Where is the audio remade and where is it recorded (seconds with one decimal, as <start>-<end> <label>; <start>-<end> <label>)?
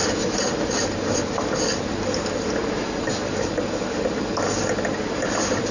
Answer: 0.0-5.7 recorded